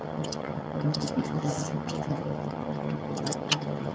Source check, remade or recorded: remade